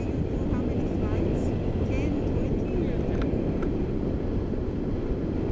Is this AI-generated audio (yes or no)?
no